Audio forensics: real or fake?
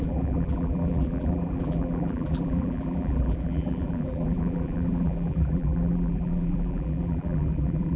fake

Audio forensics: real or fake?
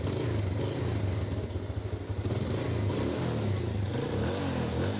real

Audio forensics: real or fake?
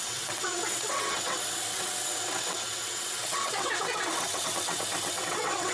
fake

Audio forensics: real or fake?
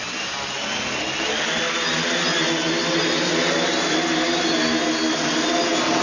real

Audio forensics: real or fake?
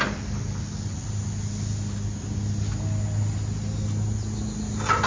real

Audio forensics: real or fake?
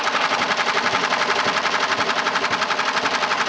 real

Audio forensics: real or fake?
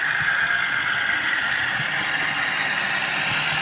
real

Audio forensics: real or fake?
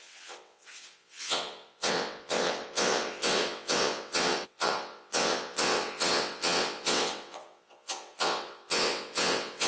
fake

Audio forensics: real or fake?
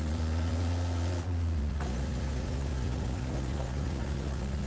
fake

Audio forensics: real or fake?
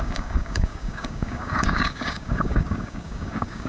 fake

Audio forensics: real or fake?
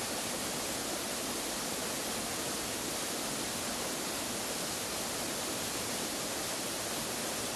real